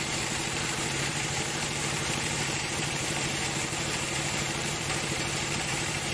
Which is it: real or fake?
fake